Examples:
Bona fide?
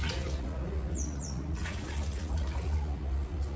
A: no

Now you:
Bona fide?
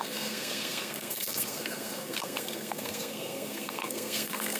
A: no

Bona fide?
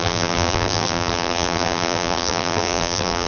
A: no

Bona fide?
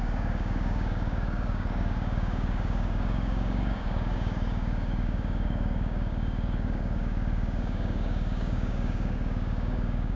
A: no